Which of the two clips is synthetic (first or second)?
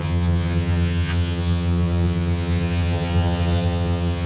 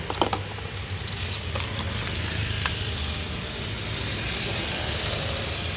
first